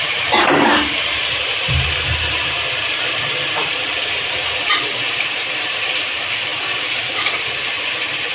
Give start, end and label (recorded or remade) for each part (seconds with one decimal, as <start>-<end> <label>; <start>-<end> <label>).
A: 0.0-8.3 remade